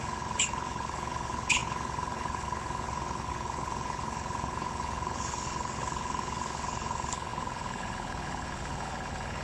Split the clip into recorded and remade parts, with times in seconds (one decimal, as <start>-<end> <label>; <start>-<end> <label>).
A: 0.0-9.4 remade